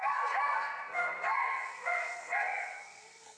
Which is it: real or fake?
fake